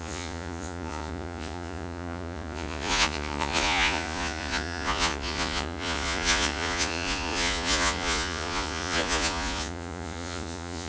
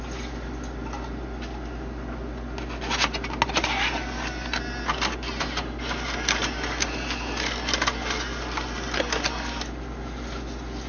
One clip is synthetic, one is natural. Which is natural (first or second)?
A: second